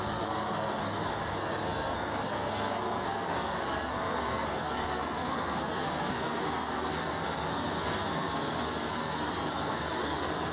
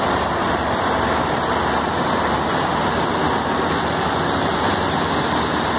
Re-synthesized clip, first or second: first